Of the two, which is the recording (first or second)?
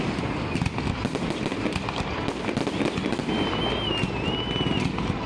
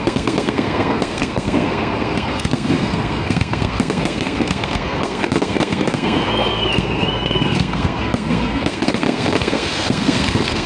first